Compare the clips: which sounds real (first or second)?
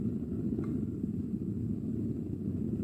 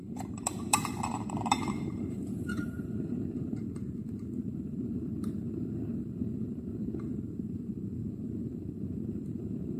first